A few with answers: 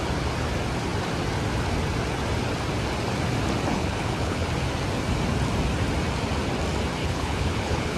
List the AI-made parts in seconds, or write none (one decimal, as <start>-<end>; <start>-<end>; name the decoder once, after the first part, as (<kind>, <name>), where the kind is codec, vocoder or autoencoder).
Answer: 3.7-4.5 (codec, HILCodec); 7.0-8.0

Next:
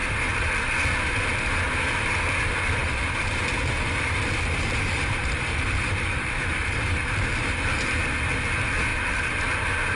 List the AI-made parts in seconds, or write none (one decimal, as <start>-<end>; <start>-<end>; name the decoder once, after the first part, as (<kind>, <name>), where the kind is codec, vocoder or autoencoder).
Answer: 2.8-7.2 (vocoder, BigVGAN v2); 8.9-9.4

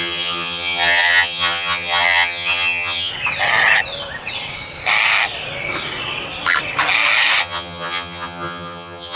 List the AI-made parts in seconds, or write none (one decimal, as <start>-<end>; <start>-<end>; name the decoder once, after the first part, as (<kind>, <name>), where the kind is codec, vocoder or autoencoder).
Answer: 0.0-3.1 (vocoder, HiFi-GAN); 7.4-9.2

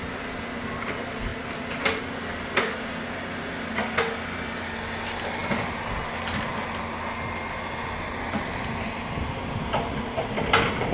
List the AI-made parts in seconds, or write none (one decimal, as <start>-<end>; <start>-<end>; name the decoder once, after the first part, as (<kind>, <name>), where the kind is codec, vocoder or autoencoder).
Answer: none